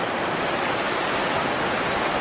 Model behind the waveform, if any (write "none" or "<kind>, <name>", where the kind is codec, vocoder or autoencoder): none